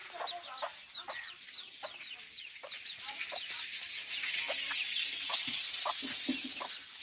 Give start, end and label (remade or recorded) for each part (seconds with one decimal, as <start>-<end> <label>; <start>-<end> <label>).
0.0-7.0 recorded